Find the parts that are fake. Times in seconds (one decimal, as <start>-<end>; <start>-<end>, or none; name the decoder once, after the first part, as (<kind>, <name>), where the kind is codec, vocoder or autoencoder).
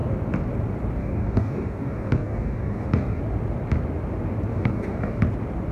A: 1.0-3.2 (codec, DAC); 4.5-5.2